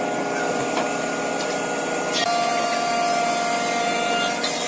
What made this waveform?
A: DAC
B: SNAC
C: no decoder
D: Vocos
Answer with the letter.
C